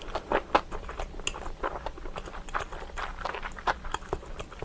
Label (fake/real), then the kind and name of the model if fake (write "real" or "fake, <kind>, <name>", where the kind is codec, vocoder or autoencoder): real